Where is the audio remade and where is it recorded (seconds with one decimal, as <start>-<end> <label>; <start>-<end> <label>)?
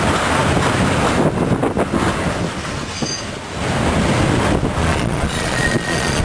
0.0-4.8 recorded; 4.8-6.2 remade